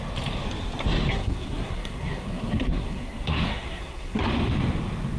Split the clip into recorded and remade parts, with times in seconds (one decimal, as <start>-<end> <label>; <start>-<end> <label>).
0.0-1.1 recorded; 1.1-4.2 remade; 4.2-5.2 recorded

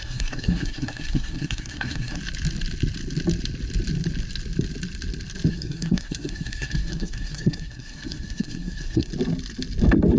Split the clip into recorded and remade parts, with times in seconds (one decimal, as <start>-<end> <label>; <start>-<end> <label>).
0.0-2.2 remade; 2.2-5.5 recorded; 5.5-9.1 remade; 9.1-10.2 recorded

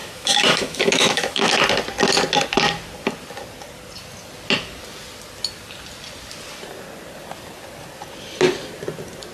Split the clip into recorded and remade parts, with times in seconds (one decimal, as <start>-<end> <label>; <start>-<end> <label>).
0.0-1.6 remade; 1.6-9.3 recorded